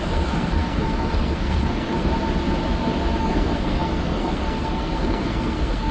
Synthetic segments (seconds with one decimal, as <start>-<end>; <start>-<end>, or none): 0.0-2.1; 3.2-5.9